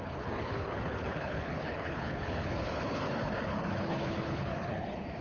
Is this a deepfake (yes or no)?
yes